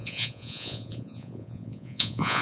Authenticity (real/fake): fake